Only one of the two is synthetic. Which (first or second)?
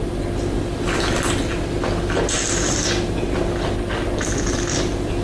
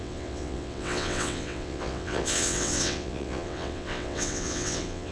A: second